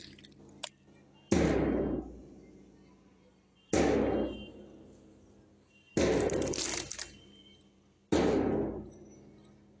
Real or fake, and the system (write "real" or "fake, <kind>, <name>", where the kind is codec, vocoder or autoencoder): real